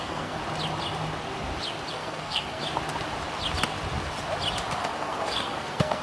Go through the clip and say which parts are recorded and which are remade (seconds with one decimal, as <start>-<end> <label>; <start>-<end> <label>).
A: 0.0-0.4 remade; 0.4-1.9 recorded; 1.9-2.6 remade; 2.6-4.8 recorded; 4.8-6.0 remade